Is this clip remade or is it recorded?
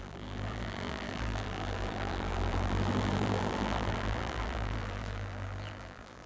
remade